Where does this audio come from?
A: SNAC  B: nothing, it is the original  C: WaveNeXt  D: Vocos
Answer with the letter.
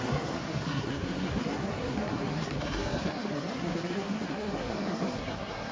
A